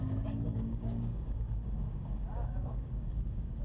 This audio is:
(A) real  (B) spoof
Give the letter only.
B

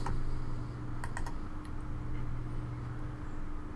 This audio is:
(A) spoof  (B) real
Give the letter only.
B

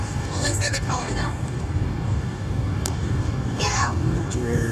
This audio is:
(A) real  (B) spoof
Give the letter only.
B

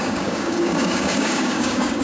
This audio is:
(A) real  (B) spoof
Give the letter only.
B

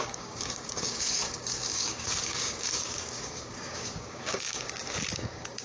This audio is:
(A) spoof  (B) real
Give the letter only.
A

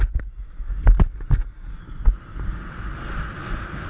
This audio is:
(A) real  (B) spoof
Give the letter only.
A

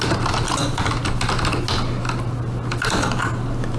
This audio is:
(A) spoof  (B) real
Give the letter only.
B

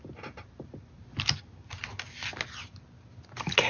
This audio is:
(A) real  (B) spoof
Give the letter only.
A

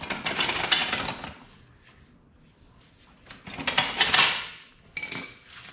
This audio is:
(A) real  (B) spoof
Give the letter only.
A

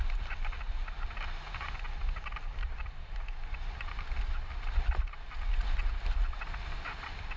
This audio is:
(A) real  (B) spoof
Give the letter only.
A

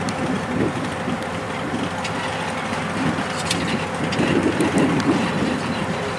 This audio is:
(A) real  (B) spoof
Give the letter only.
A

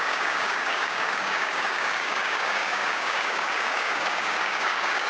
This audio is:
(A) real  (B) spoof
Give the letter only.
B